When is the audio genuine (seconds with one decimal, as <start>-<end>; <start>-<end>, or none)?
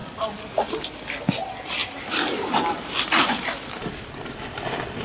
0.0-5.0